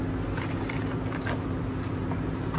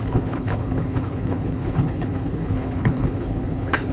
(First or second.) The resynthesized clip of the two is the second